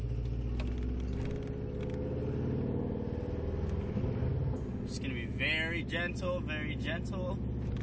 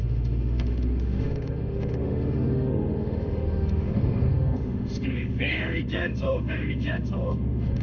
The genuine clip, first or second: first